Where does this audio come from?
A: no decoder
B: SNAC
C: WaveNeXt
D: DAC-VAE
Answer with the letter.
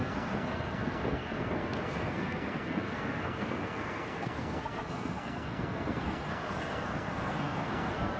B